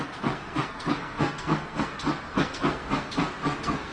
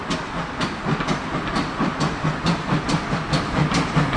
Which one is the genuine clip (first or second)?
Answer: second